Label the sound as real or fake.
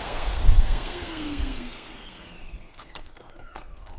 fake